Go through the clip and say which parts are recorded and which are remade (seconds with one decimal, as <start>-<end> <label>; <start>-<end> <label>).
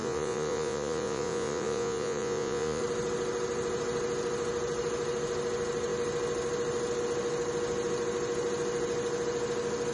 0.0-2.8 remade; 2.8-9.9 recorded